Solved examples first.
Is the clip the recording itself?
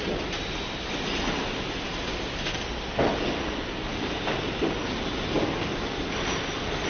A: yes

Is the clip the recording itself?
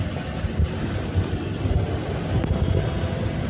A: yes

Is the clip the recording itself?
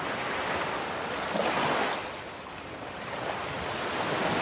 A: yes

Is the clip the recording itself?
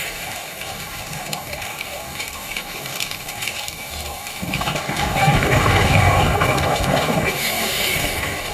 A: no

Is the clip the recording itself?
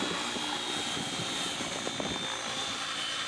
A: yes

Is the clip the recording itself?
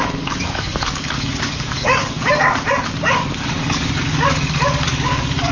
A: no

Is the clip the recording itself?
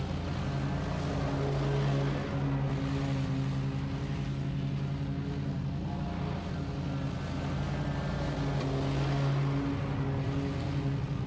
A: yes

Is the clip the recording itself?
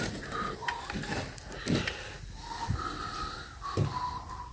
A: yes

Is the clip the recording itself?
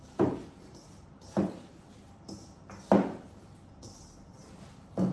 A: yes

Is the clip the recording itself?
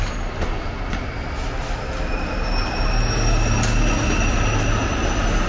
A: yes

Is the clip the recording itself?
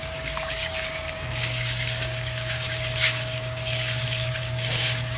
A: no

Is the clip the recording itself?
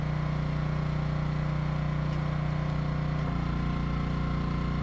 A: yes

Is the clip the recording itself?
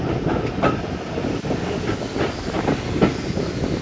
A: yes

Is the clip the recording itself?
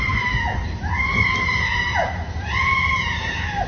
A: yes